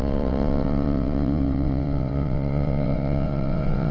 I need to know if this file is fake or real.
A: fake